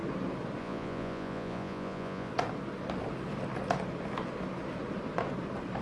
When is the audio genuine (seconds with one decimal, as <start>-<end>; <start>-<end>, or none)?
0.0-0.6; 2.3-5.8